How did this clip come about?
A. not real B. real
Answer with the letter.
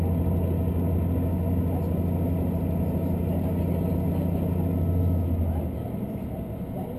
B